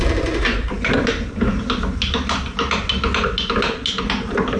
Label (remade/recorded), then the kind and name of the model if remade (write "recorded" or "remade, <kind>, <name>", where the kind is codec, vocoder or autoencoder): recorded